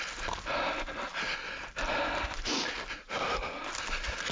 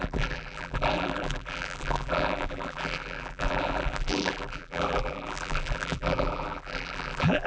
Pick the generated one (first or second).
second